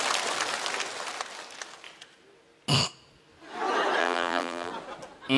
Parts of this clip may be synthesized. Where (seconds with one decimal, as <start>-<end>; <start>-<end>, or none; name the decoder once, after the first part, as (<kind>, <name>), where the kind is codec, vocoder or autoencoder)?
4.0-4.7 (vocoder, BigVGAN v2)